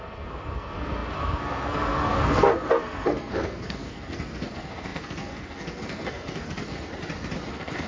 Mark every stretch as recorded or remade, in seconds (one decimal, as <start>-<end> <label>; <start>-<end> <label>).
0.0-6.9 remade; 6.9-7.5 recorded; 7.5-7.9 remade